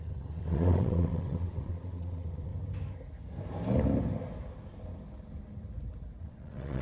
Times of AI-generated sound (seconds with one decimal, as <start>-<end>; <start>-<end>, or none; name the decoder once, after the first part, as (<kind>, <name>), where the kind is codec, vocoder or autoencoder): 0.0-2.5 (vocoder, WaveNeXt); 6.2-6.8